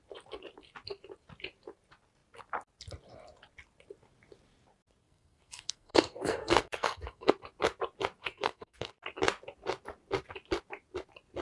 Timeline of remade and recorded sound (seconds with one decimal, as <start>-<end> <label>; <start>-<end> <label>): 0.0-5.0 recorded; 5.0-7.3 remade; 7.3-8.2 recorded; 8.2-8.9 remade; 8.9-11.4 recorded